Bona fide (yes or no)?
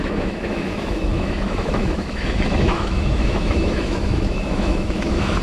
no